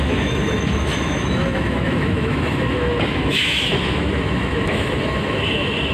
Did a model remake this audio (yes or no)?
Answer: yes